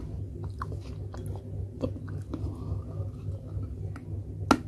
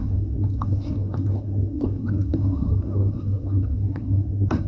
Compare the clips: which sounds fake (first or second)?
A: second